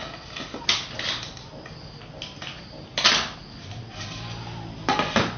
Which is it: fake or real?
real